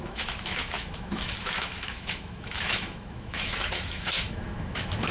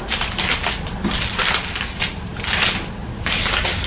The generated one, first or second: first